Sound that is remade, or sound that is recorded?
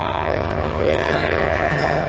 remade